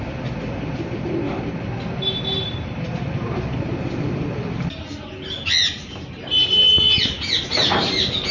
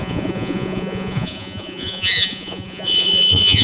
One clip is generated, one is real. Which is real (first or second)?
first